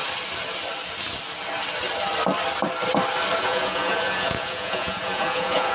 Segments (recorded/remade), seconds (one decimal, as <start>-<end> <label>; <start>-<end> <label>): 0.0-3.4 recorded; 3.4-5.7 remade